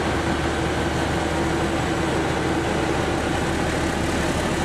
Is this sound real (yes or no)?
yes